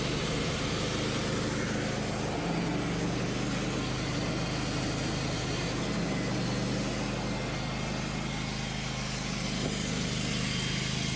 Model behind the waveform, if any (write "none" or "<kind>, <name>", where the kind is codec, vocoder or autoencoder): none